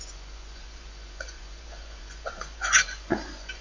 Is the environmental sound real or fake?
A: fake